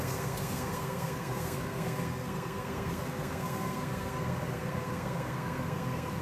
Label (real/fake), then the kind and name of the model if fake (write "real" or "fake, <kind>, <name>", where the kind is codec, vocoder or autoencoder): fake, codec, SNAC